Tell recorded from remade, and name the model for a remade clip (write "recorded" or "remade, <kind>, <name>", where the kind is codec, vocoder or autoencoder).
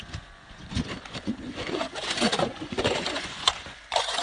remade, vocoder, Vocos